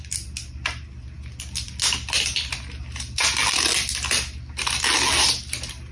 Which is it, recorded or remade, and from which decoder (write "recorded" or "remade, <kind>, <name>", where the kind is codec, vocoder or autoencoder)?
recorded